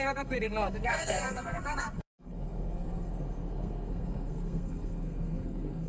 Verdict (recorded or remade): remade